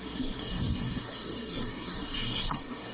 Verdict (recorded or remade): remade